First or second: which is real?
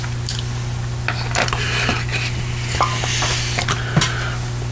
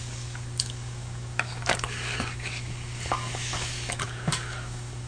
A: first